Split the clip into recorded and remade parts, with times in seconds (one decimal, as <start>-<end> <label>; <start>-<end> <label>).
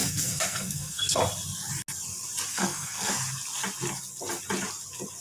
0.0-1.2 remade; 1.2-2.5 recorded; 2.5-3.1 remade; 3.1-5.2 recorded